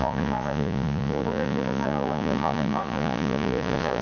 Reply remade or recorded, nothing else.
remade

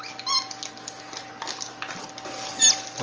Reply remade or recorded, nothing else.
recorded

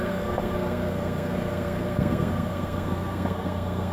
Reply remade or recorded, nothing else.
remade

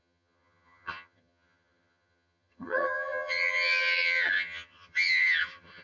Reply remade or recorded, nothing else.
remade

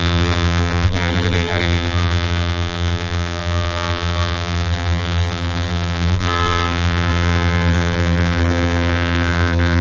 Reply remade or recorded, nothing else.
remade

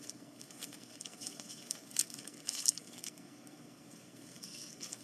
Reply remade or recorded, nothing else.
remade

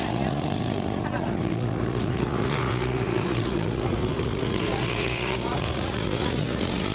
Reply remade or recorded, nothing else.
remade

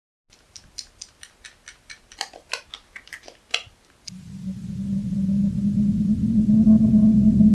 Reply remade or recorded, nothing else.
recorded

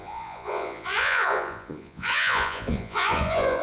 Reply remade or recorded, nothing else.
remade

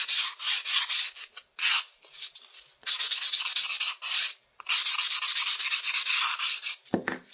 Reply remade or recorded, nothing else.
recorded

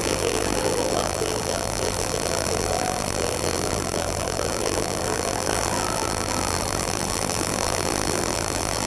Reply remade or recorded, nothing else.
remade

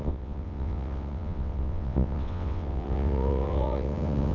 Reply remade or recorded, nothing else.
remade